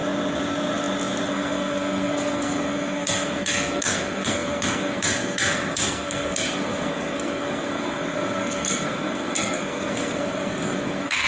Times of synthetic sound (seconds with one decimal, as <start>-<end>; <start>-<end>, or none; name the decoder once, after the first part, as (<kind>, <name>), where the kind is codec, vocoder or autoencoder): 1.3-11.3 (codec, SNAC)